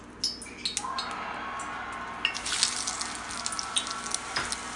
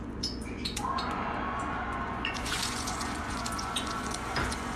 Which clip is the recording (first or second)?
first